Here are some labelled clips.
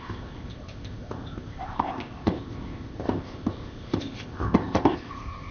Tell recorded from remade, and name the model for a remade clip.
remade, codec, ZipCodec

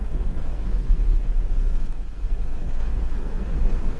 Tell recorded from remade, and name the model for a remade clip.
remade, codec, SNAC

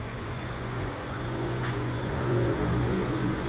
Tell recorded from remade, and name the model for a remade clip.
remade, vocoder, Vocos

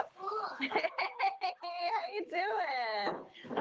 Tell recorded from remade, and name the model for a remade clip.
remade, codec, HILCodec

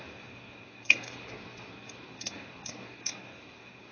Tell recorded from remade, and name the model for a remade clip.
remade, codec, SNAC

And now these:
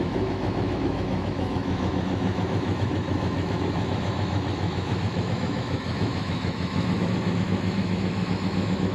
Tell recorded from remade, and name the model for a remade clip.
remade, autoencoder, DAC-VAE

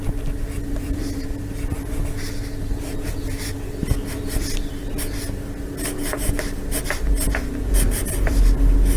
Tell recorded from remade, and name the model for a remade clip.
recorded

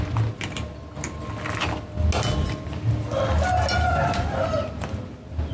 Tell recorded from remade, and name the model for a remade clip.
recorded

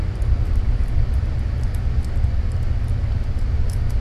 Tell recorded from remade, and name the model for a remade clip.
recorded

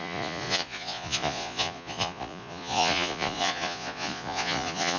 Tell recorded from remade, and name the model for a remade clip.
remade, vocoder, Vocos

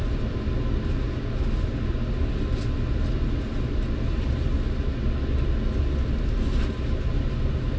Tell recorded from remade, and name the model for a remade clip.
recorded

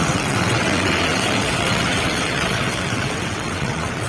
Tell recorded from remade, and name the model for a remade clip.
remade, vocoder, WaveNeXt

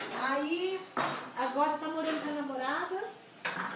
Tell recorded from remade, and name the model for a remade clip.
recorded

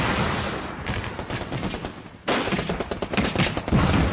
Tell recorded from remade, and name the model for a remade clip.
recorded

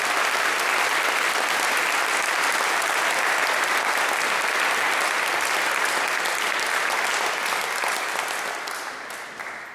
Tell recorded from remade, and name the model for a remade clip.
recorded